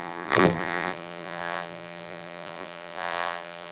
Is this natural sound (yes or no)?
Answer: no